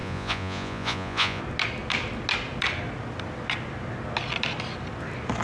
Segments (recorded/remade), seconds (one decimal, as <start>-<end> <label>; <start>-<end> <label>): 0.0-1.4 remade; 1.4-5.4 recorded